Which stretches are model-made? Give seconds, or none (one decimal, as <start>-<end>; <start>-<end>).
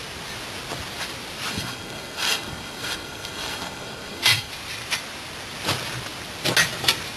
1.5-4.5